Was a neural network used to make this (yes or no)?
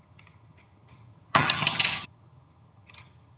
yes